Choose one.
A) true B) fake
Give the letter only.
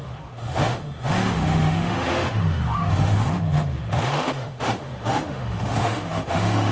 B